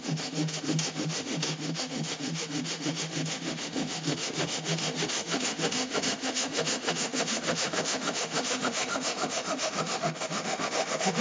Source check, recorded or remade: remade